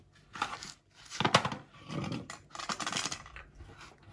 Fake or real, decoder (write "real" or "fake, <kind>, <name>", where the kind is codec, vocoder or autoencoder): real